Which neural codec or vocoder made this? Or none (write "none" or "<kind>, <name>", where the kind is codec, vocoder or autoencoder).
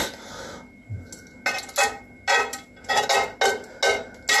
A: none